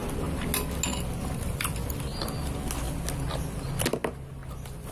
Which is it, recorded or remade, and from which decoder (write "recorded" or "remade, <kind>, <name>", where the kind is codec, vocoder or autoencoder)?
recorded